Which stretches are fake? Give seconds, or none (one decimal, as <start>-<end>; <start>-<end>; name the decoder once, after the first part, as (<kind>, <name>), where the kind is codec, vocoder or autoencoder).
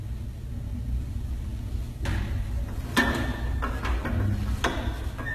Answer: none